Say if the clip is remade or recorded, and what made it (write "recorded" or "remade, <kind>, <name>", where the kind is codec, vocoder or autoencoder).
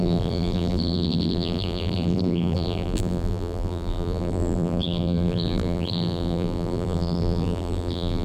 remade, vocoder, BigVGAN v2